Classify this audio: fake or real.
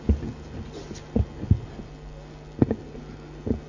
real